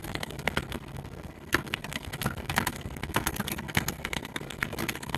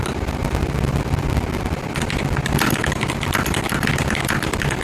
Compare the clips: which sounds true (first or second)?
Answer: second